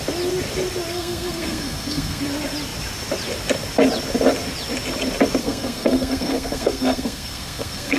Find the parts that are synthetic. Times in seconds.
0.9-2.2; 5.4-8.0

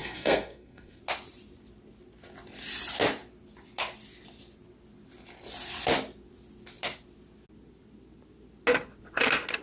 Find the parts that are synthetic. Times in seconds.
0.0-1.0

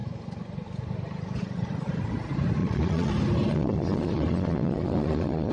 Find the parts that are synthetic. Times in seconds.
2.6-3.1; 3.5-5.5

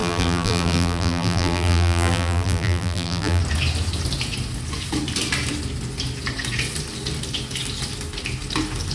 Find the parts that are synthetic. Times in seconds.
0.0-3.4

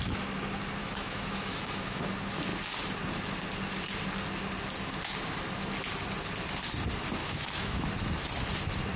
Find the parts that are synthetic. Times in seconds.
0.8-2.0; 7.2-7.9

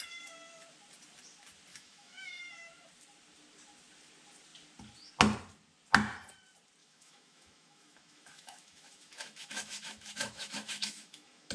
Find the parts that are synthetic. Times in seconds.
1.7-2.4; 6.8-11.5

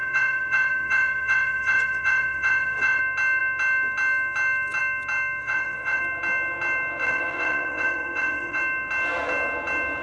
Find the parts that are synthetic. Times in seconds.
0.0-3.0; 5.4-6.0; 7.0-8.6

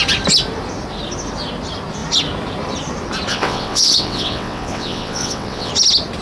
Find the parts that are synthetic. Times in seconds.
3.3-5.7